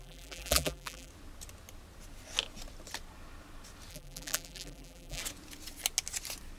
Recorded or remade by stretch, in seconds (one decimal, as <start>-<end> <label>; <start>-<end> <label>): 0.0-1.1 remade; 1.1-3.9 recorded; 3.9-5.2 remade; 5.2-6.6 recorded